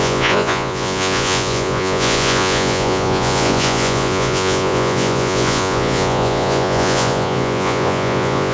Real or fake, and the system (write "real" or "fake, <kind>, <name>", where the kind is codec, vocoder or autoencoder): fake, vocoder, Vocos